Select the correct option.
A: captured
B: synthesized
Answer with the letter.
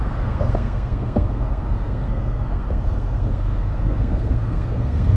B